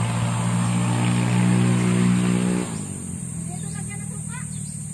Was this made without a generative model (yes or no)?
yes